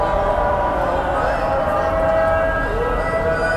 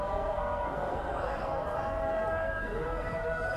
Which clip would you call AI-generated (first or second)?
second